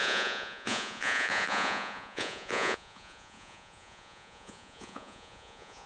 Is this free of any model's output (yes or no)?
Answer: no